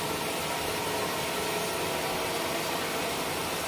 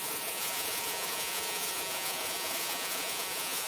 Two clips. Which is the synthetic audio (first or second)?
second